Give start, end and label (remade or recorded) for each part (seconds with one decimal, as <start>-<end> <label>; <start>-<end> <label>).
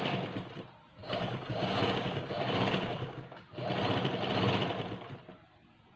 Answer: 0.0-1.0 recorded; 1.0-3.4 remade; 3.4-6.0 recorded